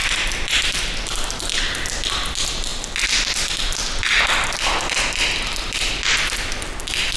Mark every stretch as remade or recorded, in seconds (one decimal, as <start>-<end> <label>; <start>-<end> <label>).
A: 0.0-0.5 remade; 0.5-7.2 recorded